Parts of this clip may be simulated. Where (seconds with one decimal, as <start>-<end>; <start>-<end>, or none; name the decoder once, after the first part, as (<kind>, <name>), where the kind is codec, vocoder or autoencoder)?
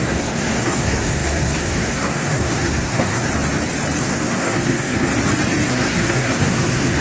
0.0-3.3 (codec, SNAC); 4.0-5.1; 5.7-7.0